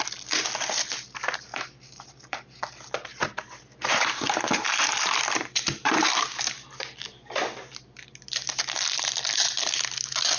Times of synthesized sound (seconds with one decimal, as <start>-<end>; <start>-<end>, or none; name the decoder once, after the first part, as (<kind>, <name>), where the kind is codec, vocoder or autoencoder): 1.5-2.6 (vocoder, BigVGAN v2); 3.1-7.0